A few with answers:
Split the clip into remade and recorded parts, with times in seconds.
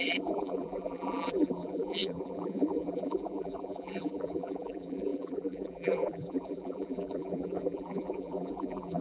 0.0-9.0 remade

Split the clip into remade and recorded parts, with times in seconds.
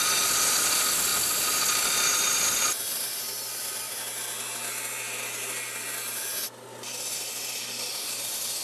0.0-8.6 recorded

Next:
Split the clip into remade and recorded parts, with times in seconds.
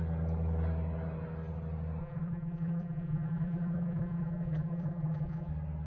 0.0-2.0 recorded; 2.0-5.5 remade; 5.5-5.9 recorded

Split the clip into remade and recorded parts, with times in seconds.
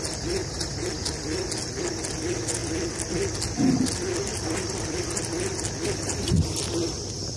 0.0-0.4 recorded; 0.4-0.9 remade; 0.9-4.3 recorded; 4.3-4.9 remade; 4.9-7.4 recorded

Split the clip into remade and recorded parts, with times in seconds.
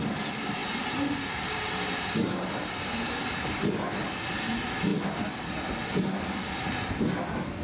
0.0-0.6 recorded; 0.6-2.7 remade; 2.7-7.6 recorded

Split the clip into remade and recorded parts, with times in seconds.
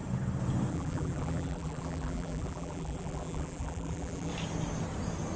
0.0-0.7 recorded; 0.7-4.3 remade; 4.3-5.4 recorded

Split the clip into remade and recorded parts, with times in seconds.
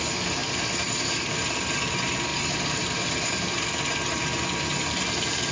0.0-0.4 recorded; 0.4-1.5 remade; 1.5-2.3 recorded; 2.3-3.8 remade; 3.8-5.5 recorded